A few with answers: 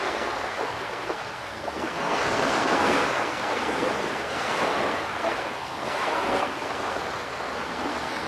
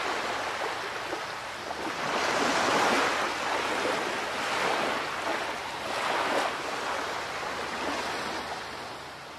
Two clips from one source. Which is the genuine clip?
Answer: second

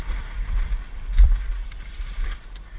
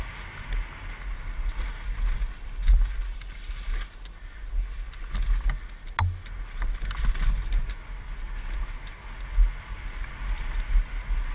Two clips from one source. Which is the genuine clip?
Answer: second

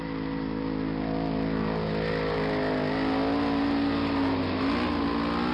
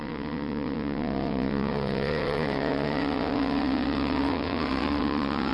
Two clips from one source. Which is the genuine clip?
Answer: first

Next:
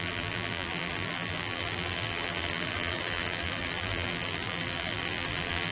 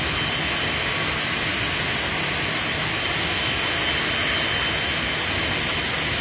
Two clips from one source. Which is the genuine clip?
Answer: second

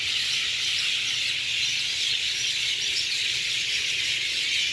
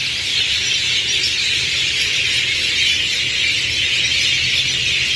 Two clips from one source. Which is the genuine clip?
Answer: second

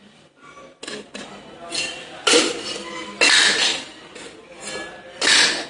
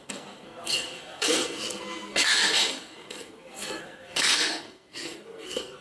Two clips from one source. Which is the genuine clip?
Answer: first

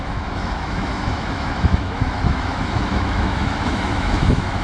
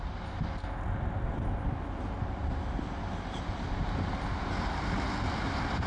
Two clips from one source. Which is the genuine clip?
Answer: second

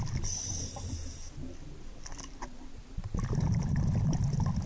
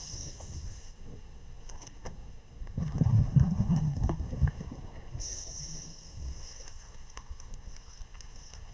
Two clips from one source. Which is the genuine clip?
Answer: first